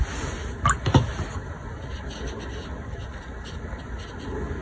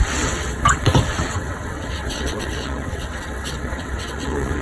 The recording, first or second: first